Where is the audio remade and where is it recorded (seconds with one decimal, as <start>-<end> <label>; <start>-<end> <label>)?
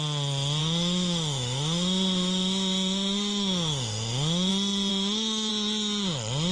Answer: 0.0-0.6 recorded; 0.6-4.5 remade; 4.5-4.9 recorded; 4.9-5.5 remade; 5.5-6.5 recorded